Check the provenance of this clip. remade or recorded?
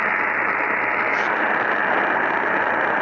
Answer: recorded